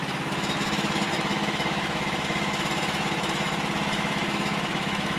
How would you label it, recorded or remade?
remade